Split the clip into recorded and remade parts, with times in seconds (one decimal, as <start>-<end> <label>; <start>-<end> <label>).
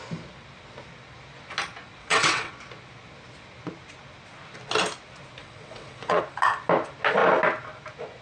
0.0-2.0 recorded; 2.0-2.5 remade; 2.5-5.4 recorded; 5.4-6.2 remade; 6.2-8.2 recorded